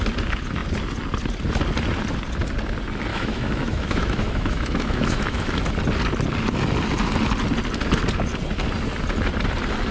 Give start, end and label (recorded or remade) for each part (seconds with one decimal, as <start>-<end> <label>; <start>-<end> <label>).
0.0-3.1 recorded; 3.1-5.7 remade; 5.7-9.9 recorded